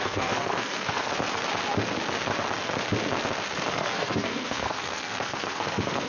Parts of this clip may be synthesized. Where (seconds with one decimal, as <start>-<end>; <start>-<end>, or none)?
0.0-1.1; 3.7-6.1